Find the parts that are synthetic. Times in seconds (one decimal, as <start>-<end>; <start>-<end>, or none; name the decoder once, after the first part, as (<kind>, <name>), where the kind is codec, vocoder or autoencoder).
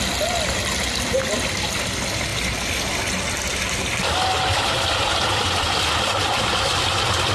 none